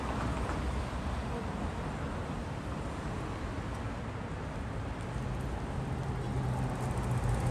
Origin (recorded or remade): recorded